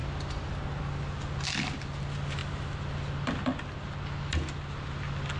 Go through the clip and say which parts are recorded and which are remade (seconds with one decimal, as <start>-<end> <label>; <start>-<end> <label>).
0.0-5.4 recorded